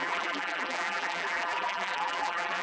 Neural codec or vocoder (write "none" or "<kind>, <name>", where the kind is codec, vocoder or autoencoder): vocoder, BigVGAN v2